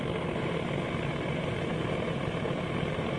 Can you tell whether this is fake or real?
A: real